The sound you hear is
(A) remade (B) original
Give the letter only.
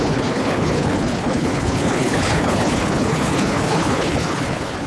A